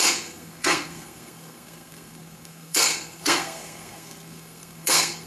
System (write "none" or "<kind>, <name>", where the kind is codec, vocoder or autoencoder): codec, SNAC